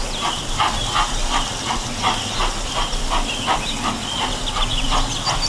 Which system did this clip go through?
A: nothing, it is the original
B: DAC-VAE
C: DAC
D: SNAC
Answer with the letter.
A